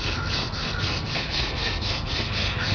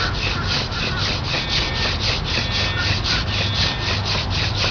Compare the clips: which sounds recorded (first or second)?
second